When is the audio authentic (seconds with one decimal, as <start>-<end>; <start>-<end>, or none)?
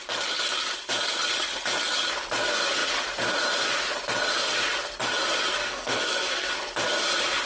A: 0.0-5.5; 6.5-7.5